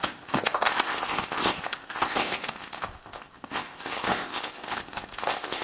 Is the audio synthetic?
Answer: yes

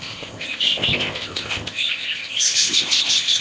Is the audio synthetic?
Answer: yes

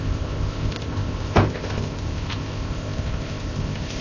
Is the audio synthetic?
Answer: yes